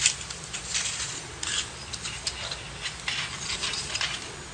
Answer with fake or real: real